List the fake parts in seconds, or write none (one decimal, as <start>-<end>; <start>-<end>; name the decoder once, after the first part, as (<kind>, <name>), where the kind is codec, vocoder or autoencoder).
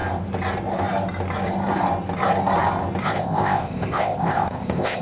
3.0-5.0 (codec, ZipCodec)